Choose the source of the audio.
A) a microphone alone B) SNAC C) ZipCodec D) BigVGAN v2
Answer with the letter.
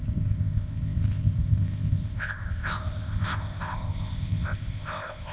C